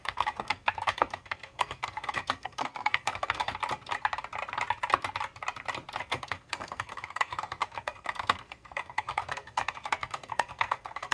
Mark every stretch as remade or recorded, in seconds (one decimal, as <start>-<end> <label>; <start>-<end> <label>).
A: 0.0-3.5 remade; 3.5-6.0 recorded; 6.0-11.1 remade